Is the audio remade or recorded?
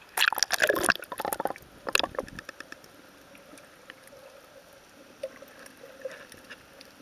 recorded